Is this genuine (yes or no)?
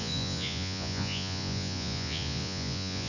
no